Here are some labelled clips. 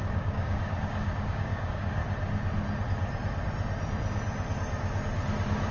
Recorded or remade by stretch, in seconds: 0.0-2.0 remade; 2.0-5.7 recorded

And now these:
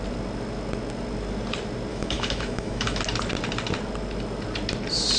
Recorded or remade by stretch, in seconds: 0.0-1.9 recorded; 1.9-3.0 remade; 3.0-5.2 recorded

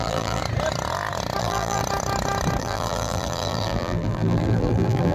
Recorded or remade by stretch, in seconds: 0.0-0.4 remade; 0.4-1.4 recorded; 1.4-1.8 remade; 1.8-2.6 recorded; 2.6-5.1 remade

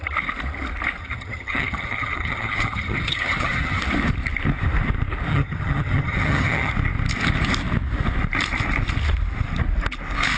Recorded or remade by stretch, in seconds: 0.0-1.0 recorded; 1.0-3.8 remade; 3.8-5.3 recorded; 5.3-6.7 remade; 6.7-10.4 recorded

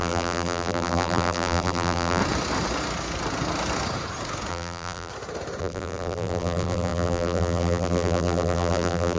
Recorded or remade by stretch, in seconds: 0.0-2.2 remade; 2.2-4.5 recorded; 4.5-5.1 remade; 5.1-5.6 recorded; 5.6-9.2 remade

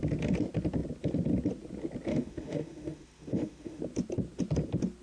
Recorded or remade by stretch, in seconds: 0.0-2.1 recorded; 2.1-3.8 remade; 3.8-5.0 recorded

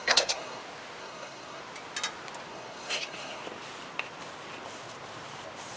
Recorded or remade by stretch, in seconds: 0.0-0.6 remade; 0.6-1.0 recorded; 1.0-1.6 remade; 1.6-2.5 recorded; 2.5-3.4 remade; 3.4-5.8 recorded